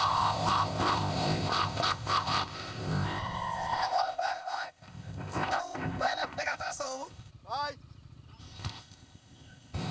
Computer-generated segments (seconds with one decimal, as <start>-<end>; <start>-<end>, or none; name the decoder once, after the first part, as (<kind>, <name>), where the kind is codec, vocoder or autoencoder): 0.0-7.3 (codec, ZipCodec); 8.4-9.9